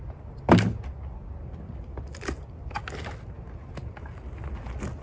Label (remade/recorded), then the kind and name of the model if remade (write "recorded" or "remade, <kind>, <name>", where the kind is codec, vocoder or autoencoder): recorded